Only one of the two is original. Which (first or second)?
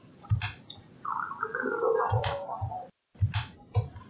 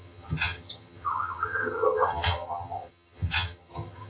first